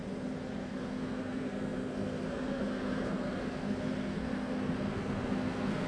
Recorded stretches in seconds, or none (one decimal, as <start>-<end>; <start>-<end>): 0.0-0.6